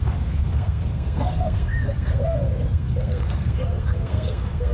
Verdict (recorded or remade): remade